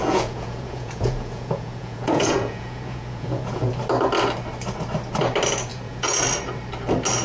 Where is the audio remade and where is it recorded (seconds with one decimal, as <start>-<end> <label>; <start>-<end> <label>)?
0.0-3.7 remade; 3.7-5.7 recorded; 5.7-6.2 remade; 6.2-7.2 recorded